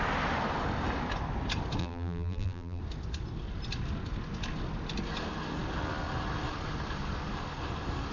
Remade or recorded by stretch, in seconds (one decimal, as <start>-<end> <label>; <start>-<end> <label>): 0.0-1.8 recorded; 1.8-2.8 remade; 2.8-8.1 recorded